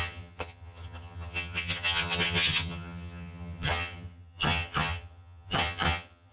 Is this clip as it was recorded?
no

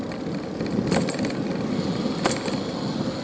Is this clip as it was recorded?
yes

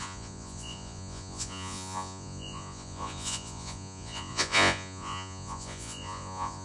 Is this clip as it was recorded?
no